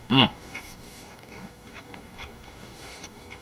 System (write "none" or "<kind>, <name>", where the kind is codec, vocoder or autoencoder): codec, DAC